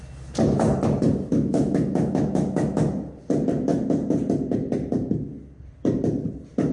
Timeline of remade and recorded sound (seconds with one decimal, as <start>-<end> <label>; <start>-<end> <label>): 0.0-1.3 recorded; 1.3-2.8 remade; 2.8-6.7 recorded